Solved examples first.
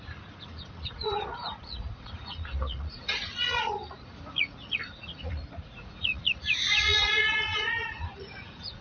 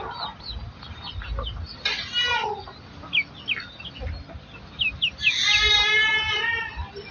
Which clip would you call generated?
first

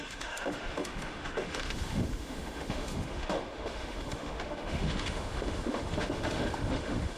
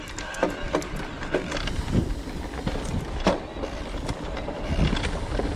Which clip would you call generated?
first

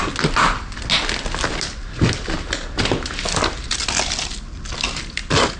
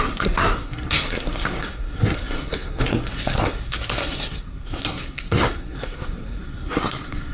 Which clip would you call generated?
second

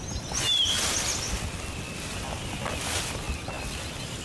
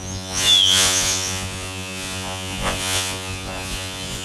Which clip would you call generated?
second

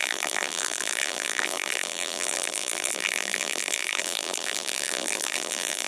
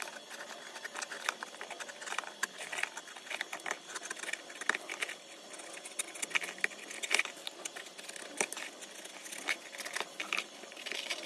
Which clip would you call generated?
first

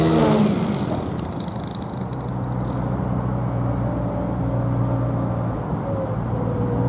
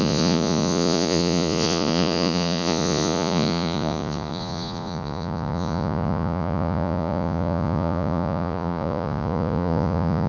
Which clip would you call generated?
second